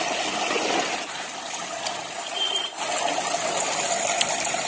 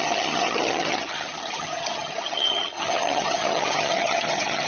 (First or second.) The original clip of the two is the first